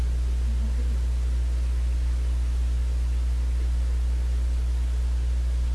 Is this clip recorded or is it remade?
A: recorded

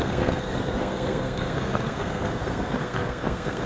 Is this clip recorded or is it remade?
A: remade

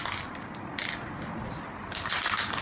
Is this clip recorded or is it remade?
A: recorded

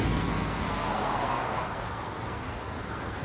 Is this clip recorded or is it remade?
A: remade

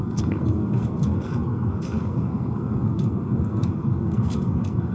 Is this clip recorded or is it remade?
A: remade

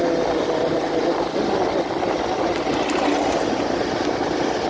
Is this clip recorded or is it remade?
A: recorded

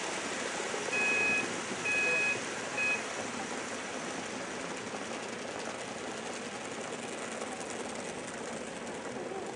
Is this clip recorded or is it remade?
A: recorded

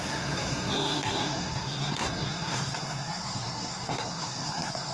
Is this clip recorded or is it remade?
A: remade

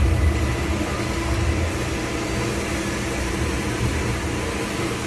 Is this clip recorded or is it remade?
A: recorded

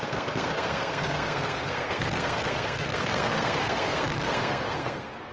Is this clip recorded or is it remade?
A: remade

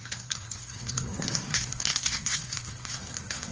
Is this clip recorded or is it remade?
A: remade